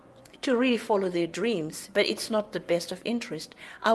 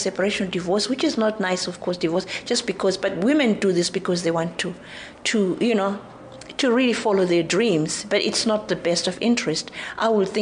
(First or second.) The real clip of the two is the second